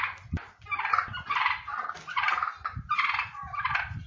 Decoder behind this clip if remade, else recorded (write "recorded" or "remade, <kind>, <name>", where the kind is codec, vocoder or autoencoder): recorded